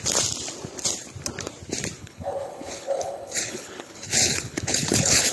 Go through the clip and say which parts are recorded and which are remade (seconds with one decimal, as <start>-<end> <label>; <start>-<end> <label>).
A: 0.0-2.0 recorded; 2.0-5.3 remade